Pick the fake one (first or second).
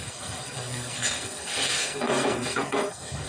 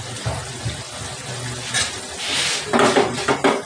first